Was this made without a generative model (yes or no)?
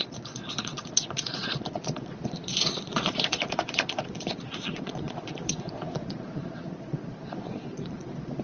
no